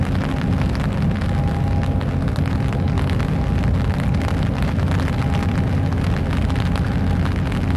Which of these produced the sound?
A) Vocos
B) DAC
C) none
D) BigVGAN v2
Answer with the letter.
C